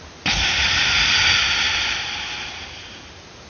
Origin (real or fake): real